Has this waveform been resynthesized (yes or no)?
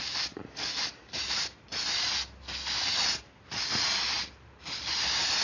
no